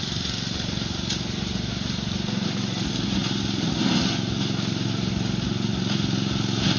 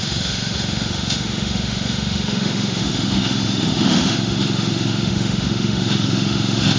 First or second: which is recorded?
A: first